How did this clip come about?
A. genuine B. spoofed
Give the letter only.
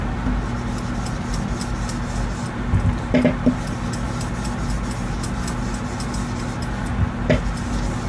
A